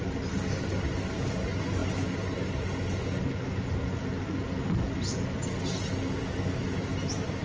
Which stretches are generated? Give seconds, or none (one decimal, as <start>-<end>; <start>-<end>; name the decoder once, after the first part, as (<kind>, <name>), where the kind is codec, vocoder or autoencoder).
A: none